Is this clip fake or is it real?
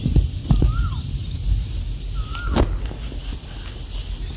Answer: real